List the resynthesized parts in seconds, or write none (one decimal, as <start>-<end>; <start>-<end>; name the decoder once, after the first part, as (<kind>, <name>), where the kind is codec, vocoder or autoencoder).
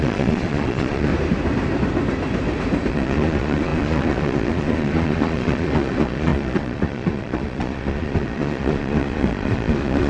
0.0-1.1 (vocoder, Vocos); 2.9-10.1